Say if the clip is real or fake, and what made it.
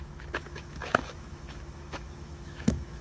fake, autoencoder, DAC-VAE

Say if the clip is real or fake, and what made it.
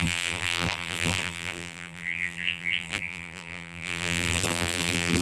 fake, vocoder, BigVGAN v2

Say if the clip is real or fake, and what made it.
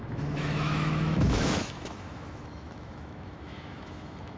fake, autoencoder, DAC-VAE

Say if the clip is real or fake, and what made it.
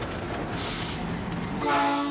real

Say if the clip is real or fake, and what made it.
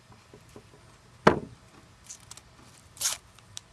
real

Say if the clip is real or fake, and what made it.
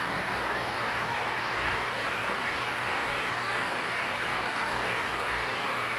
fake, codec, DAC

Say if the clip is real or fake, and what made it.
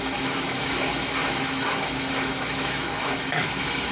fake, autoencoder, DAC-VAE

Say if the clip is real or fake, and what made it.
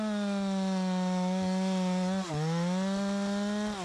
real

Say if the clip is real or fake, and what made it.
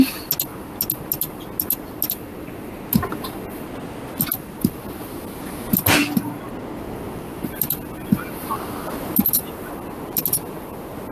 real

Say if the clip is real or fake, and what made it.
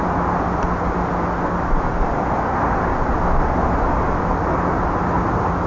real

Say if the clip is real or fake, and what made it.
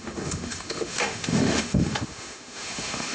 fake, autoencoder, DAC-VAE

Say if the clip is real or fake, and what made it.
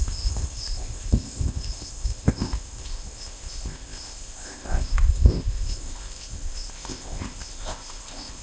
fake, codec, ZipCodec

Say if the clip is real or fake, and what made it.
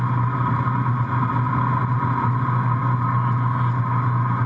real